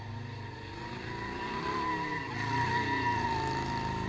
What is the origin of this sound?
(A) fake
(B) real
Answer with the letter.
B